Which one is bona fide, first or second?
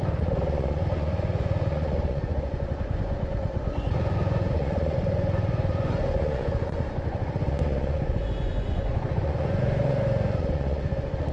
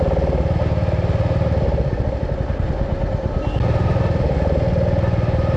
second